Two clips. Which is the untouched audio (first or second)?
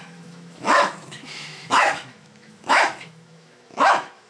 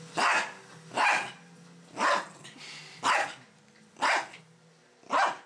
second